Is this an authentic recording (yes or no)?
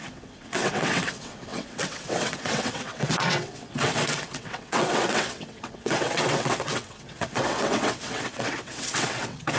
no